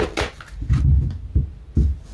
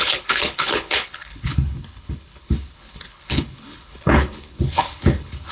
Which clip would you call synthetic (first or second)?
second